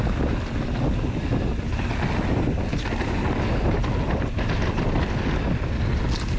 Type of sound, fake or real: real